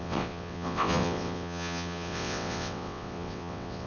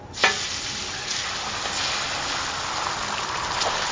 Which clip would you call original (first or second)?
second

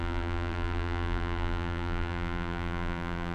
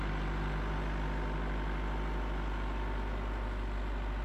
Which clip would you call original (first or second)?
second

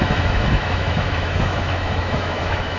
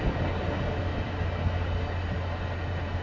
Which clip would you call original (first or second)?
second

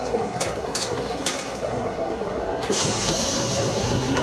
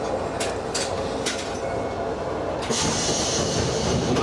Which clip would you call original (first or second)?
second